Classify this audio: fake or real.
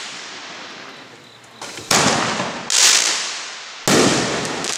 real